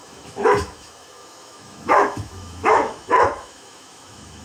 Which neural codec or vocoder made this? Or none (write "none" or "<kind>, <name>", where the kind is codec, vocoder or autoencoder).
autoencoder, DAC-VAE